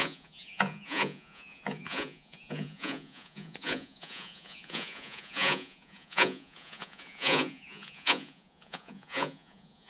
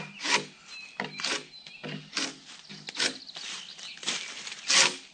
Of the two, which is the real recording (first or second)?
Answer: second